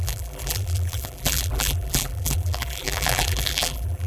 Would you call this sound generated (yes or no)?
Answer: yes